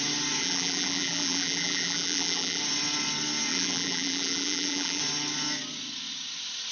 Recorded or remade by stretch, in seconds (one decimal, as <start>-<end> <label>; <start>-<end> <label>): 0.0-0.4 recorded; 0.4-2.6 remade; 2.6-3.5 recorded; 3.5-5.0 remade; 5.0-6.7 recorded